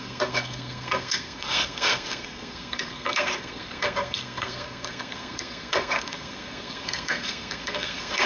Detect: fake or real fake